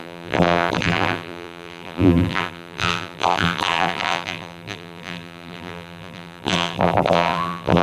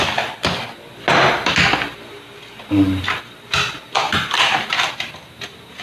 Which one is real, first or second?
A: second